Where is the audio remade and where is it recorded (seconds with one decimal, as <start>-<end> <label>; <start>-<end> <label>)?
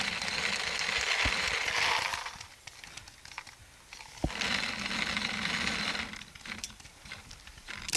0.0-2.1 recorded; 2.1-3.0 remade; 3.0-8.0 recorded